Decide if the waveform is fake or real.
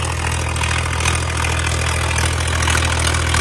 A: real